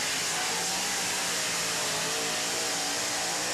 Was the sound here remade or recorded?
recorded